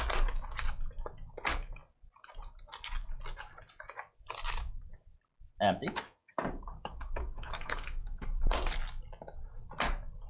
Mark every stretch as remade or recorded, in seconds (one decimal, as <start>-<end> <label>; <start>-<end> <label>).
0.0-6.2 recorded; 6.2-8.4 remade; 8.4-10.3 recorded